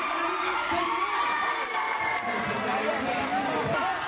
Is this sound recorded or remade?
recorded